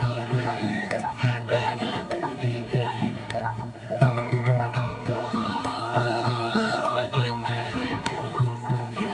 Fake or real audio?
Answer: fake